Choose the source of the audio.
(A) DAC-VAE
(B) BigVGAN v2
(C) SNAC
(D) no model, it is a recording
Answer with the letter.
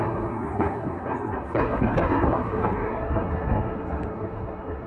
C